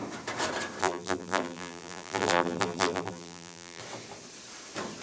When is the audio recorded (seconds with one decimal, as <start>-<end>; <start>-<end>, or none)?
0.0-0.8; 3.8-5.0